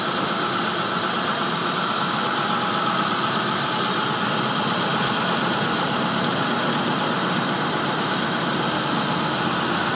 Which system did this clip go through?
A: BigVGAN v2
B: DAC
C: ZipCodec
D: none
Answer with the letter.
D